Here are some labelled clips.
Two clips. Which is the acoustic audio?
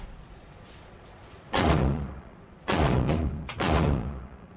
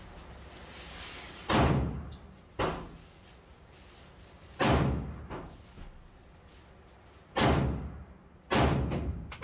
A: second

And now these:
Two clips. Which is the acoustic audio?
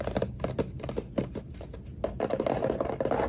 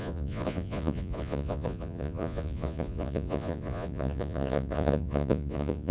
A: first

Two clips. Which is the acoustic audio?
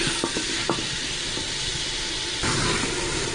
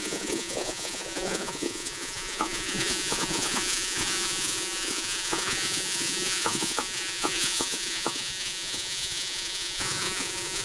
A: first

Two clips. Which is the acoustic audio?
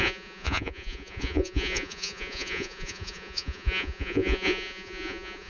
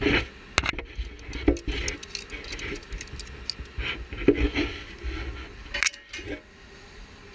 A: second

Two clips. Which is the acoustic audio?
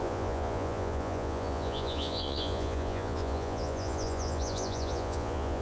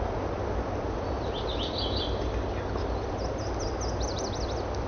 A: second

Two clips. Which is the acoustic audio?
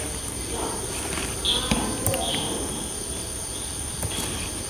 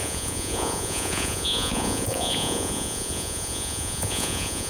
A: first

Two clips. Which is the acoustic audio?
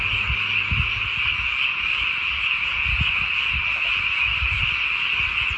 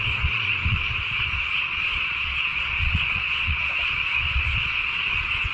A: first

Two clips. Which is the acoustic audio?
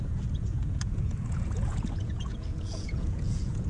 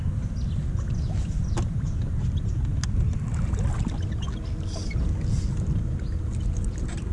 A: second